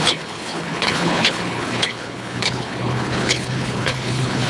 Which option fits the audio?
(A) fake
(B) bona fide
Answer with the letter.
A